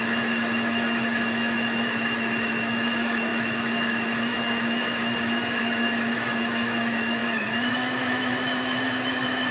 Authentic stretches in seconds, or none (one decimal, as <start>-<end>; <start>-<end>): none